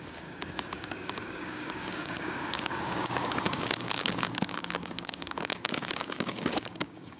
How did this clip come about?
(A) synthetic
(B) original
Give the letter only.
A